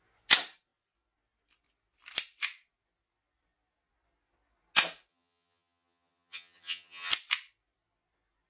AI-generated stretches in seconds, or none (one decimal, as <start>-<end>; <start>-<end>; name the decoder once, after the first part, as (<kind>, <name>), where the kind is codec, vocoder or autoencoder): 5.1-7.1 (vocoder, HiFi-GAN)